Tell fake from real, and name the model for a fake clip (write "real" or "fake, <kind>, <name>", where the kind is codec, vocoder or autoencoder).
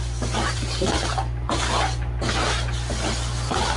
real